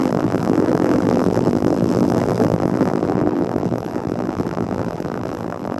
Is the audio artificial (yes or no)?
yes